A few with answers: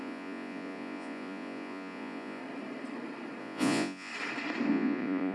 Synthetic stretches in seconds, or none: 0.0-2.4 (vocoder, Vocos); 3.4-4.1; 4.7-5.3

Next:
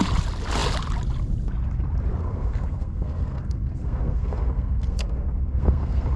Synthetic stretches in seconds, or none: 2.2-6.2 (codec, SNAC)

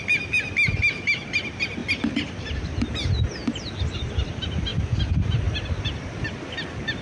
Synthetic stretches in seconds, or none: none

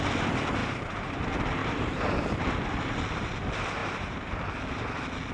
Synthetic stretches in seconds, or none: 0.6-1.2 (vocoder, BigVGAN v2); 1.6-2.5; 3.8-4.5

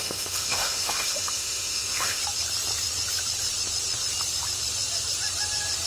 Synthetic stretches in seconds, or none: 0.0-2.2 (autoencoder, DAC-VAE)

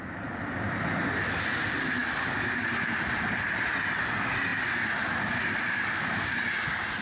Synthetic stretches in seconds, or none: none